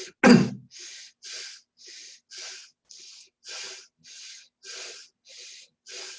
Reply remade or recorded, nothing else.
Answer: recorded